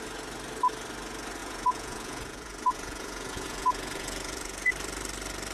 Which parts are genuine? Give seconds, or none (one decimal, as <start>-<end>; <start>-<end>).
0.0-1.4; 4.7-5.5